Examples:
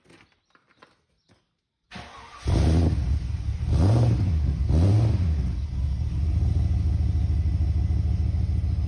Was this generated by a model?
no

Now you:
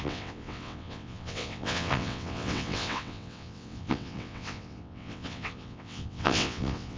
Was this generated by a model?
yes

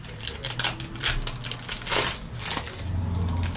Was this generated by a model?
no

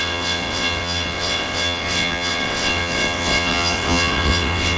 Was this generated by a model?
yes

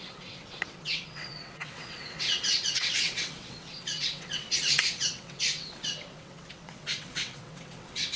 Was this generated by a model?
yes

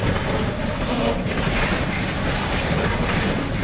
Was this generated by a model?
no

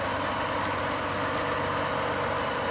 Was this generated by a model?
no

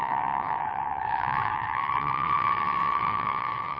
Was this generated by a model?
yes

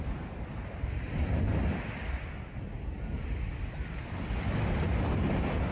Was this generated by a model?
no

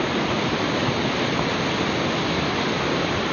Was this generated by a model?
no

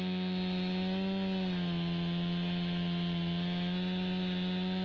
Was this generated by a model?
no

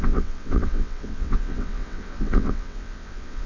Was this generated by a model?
yes